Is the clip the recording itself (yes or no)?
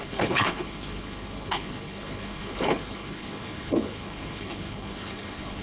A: no